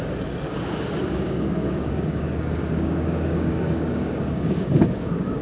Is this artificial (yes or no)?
yes